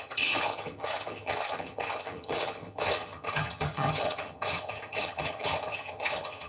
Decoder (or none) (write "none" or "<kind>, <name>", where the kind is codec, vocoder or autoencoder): vocoder, HiFi-GAN